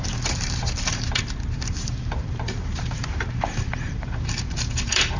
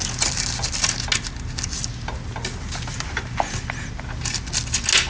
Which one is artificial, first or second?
first